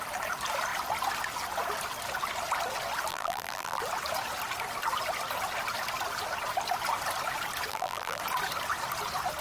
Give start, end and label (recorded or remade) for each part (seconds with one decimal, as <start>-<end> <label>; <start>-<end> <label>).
0.0-3.1 recorded; 3.1-3.8 remade; 3.8-7.7 recorded; 7.7-8.2 remade; 8.2-9.4 recorded